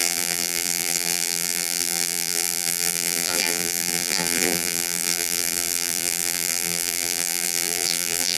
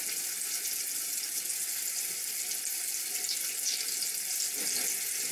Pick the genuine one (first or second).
second